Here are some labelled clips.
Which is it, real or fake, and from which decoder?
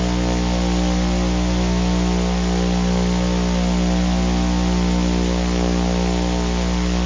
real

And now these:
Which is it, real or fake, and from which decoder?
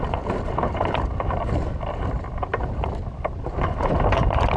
fake, vocoder, BigVGAN v2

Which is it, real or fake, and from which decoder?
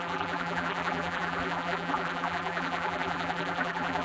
fake, vocoder, BigVGAN v2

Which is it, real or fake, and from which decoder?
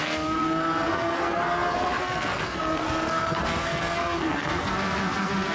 fake, codec, SNAC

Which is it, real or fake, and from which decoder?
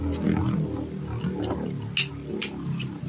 real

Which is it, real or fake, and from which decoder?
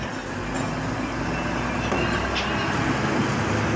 real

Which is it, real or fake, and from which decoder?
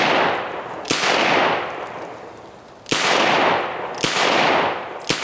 real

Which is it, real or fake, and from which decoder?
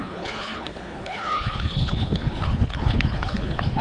fake, codec, HILCodec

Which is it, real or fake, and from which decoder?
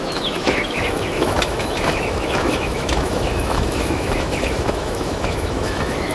fake, autoencoder, DAC-VAE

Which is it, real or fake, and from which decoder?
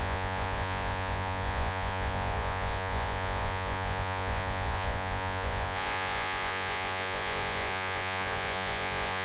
fake, vocoder, Vocos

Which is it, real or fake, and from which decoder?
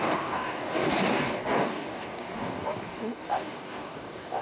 fake, codec, DAC